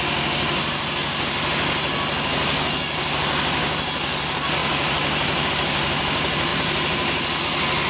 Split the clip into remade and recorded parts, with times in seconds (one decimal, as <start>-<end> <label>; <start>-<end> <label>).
0.0-4.6 recorded; 4.6-5.5 remade; 5.5-6.5 recorded; 6.5-7.4 remade; 7.4-7.9 recorded